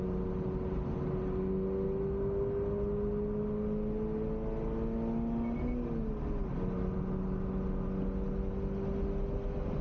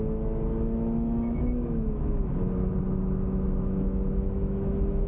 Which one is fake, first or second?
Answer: second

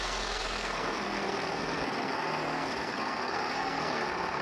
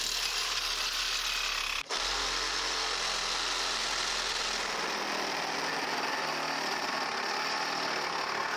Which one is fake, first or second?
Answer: first